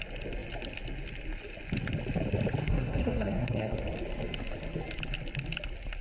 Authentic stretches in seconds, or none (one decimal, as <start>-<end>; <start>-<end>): 0.0-2.6; 3.8-6.0